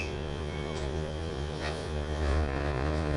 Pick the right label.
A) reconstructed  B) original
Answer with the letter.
A